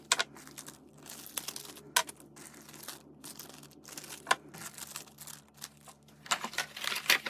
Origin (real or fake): real